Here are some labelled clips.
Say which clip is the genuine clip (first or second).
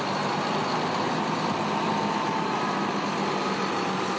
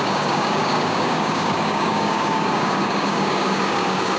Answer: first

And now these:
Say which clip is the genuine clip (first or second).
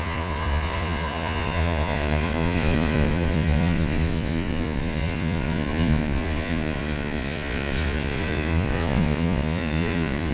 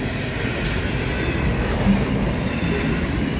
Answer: second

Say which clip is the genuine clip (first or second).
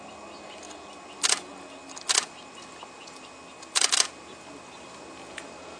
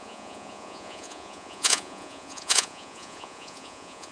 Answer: first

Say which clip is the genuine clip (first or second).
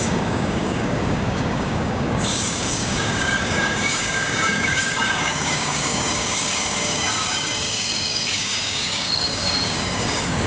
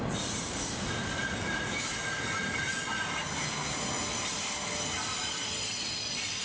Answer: second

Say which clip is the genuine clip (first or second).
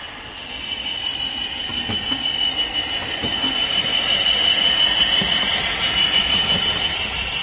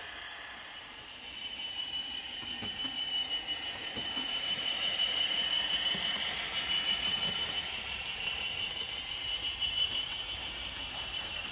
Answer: first